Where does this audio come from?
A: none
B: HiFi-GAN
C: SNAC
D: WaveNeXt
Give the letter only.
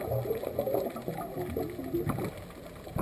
A